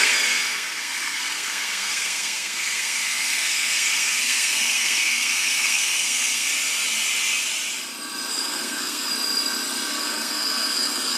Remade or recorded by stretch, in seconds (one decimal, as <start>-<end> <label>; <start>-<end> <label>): 0.0-6.5 remade; 6.5-8.3 recorded; 8.3-9.1 remade; 9.1-9.9 recorded; 9.9-11.2 remade